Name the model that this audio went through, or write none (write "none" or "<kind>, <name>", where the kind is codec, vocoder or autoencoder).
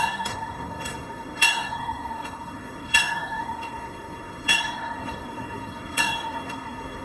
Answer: codec, SNAC